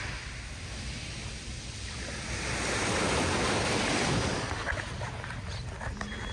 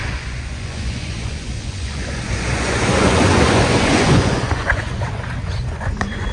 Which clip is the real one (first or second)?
first